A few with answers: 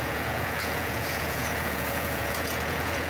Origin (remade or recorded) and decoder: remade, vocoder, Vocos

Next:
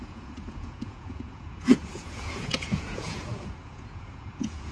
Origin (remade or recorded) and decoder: remade, vocoder, Vocos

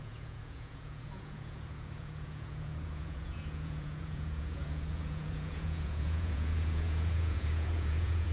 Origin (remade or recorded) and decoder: remade, vocoder, Vocos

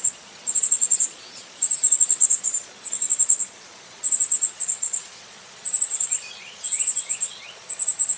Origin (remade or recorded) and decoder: remade, vocoder, Vocos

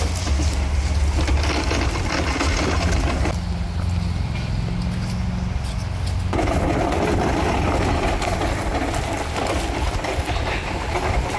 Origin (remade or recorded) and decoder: recorded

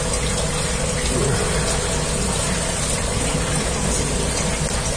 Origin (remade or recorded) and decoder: recorded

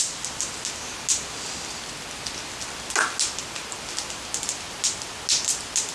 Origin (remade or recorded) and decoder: recorded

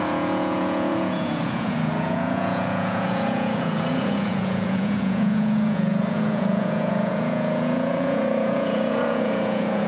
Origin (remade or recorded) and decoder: remade, vocoder, Vocos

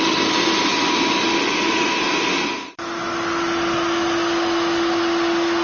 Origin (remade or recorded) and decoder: recorded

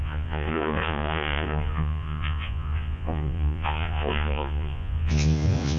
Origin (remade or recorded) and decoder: remade, vocoder, Vocos